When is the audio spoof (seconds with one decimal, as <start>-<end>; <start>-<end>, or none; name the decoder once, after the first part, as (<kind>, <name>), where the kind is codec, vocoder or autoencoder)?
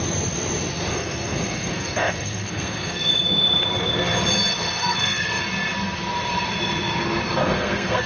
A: 0.9-3.1 (codec, SNAC); 4.5-5.4; 7.4-8.1